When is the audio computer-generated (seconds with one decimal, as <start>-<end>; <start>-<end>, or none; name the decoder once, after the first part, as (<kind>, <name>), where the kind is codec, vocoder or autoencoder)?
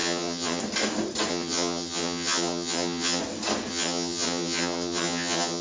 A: 0.0-0.6 (vocoder, HiFi-GAN); 1.3-3.2; 3.7-5.6